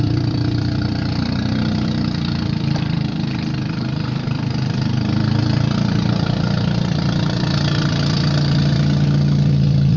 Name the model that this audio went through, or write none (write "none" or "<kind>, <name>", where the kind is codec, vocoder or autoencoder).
vocoder, BigVGAN v2